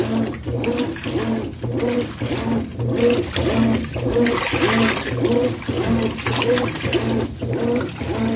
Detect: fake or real real